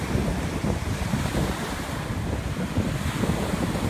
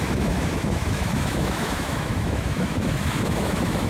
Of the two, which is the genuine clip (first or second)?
first